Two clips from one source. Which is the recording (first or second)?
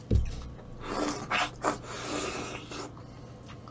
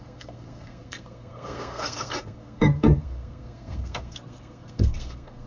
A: first